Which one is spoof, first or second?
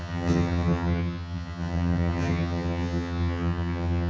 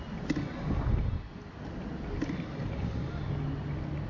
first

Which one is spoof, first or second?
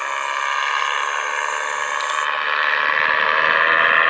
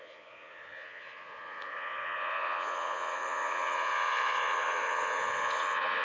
second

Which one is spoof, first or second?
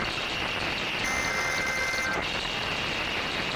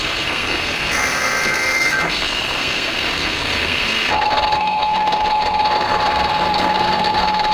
second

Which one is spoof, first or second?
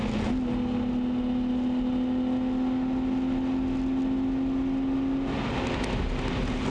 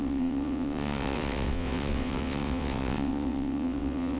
second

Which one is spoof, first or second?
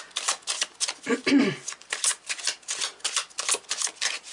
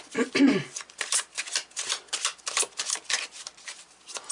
second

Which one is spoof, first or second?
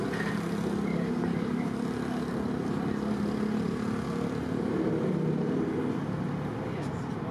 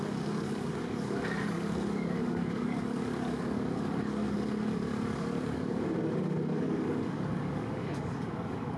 second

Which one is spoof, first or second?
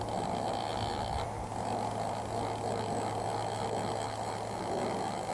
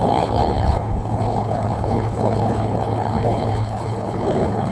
second